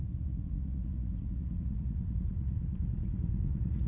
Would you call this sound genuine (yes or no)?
no